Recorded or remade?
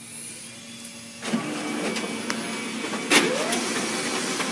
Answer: recorded